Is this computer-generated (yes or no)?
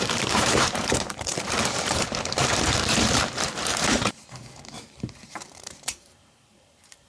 yes